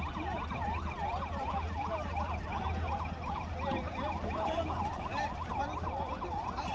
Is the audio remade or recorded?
recorded